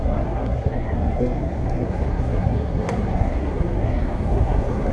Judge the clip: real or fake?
fake